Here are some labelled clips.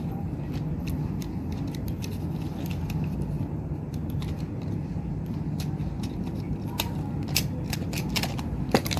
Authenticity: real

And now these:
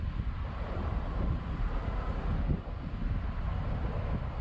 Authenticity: real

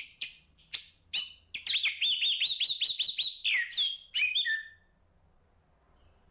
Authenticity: real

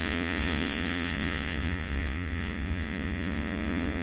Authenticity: fake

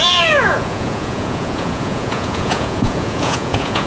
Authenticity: fake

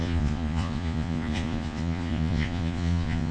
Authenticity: fake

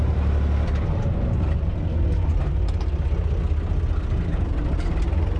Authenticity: real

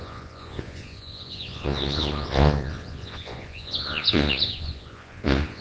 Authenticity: fake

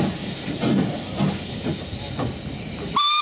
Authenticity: real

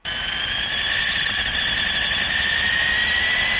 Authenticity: real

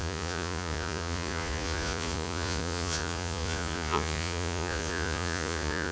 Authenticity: fake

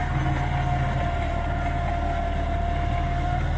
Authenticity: real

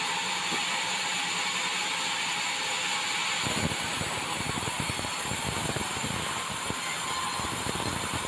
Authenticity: real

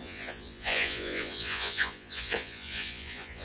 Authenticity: fake